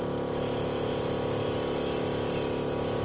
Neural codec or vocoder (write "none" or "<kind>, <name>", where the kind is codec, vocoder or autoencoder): none